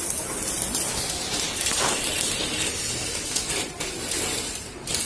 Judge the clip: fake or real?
real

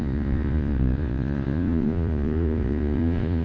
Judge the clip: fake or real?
fake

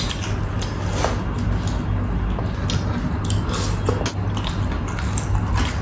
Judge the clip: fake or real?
real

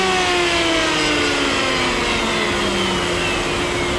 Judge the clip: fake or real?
real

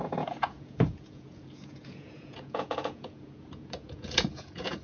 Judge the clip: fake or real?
fake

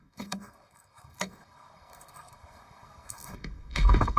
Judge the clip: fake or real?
fake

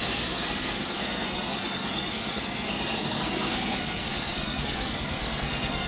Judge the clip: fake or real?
fake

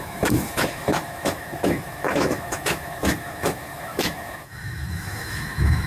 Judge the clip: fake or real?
fake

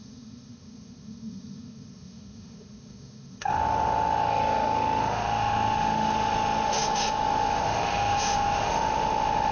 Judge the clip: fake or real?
fake